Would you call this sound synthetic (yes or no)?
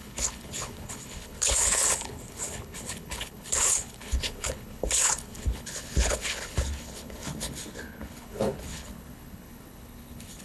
yes